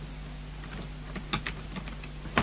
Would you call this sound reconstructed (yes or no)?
no